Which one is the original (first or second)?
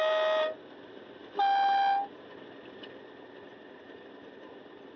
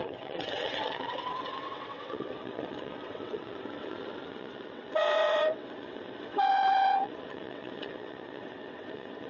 first